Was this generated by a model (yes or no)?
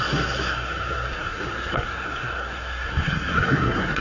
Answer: yes